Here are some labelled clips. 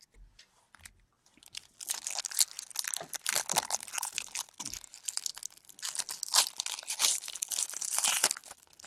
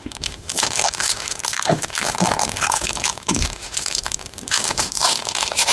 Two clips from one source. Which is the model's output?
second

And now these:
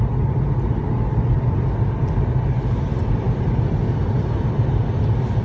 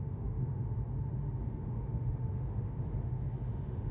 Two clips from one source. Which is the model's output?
second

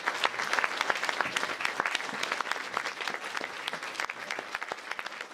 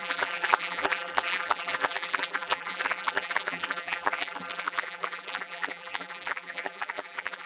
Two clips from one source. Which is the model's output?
second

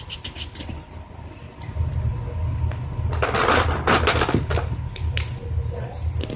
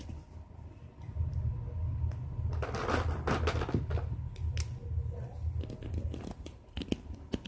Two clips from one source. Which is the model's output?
first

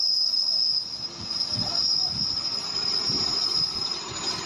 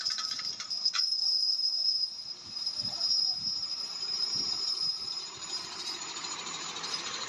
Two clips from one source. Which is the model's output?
second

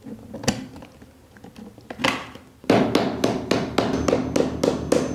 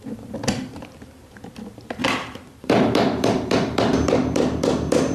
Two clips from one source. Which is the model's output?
second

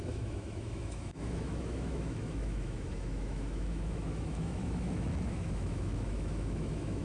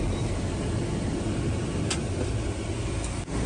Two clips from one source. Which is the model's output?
first